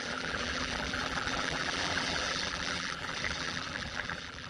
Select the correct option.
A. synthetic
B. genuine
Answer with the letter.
A